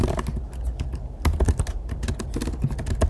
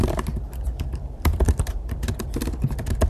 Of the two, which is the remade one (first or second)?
second